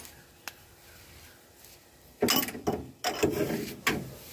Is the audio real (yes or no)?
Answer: yes